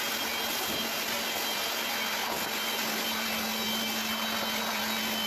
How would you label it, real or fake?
real